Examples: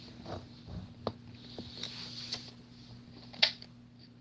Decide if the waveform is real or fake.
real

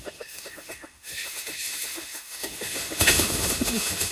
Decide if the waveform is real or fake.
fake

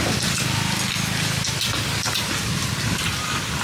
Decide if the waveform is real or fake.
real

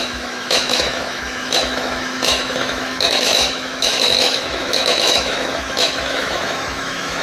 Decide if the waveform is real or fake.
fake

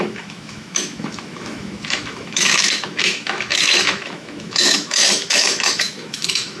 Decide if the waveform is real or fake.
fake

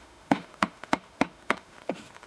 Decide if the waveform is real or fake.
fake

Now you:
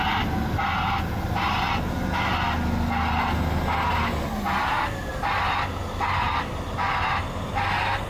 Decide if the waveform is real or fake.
real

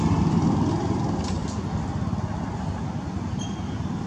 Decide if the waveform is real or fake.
real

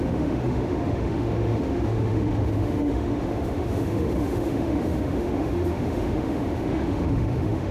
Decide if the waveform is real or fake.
fake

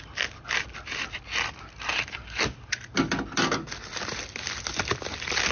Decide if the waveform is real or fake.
real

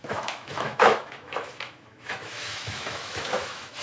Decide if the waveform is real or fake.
fake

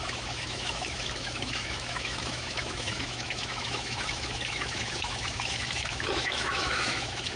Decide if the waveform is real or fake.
fake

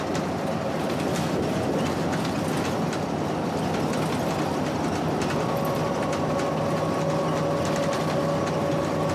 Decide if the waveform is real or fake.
real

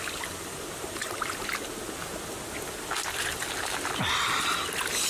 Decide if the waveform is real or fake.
real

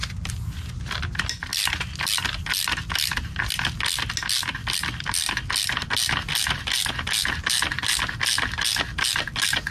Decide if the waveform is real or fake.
real